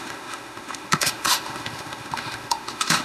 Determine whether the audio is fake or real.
fake